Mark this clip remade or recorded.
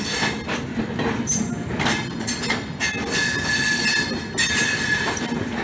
recorded